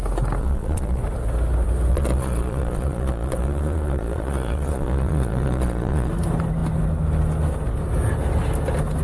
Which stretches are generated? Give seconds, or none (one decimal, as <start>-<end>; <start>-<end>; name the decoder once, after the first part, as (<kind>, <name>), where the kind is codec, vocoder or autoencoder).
0.4-1.0 (vocoder, Vocos); 1.9-6.1